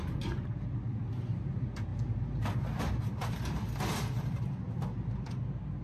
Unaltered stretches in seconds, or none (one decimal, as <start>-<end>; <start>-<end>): 0.0-5.8